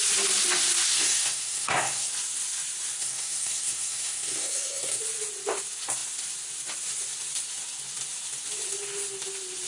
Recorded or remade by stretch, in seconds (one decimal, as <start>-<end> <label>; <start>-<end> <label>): 0.0-0.9 recorded; 0.9-2.1 remade; 2.1-3.0 recorded; 3.0-5.0 remade; 5.0-9.7 recorded